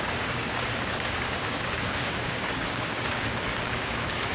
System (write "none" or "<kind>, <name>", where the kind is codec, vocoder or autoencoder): codec, DAC